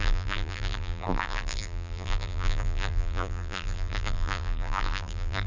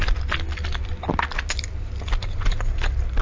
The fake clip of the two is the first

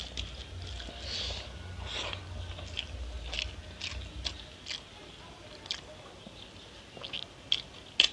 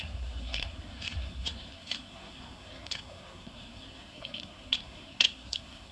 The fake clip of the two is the second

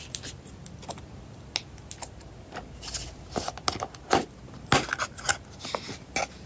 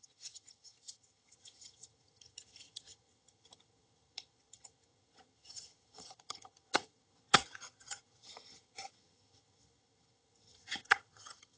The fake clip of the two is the second